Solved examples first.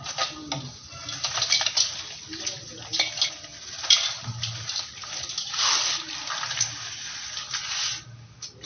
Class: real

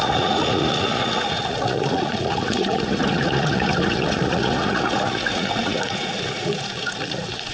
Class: fake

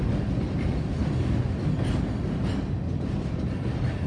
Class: real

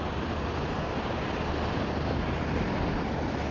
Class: real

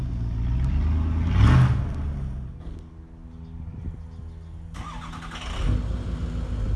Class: real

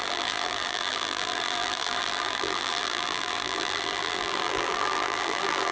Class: fake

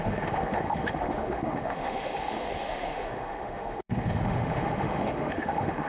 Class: fake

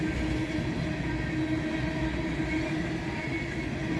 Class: real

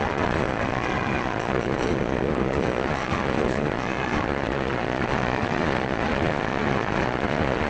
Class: fake